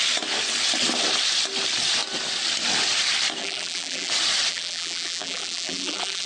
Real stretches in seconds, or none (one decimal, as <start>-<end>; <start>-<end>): 0.0-3.4; 4.1-4.5